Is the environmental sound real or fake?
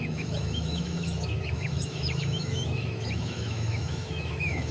fake